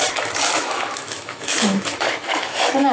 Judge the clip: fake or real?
fake